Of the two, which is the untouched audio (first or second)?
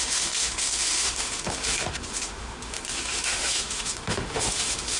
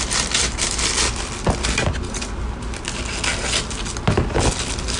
second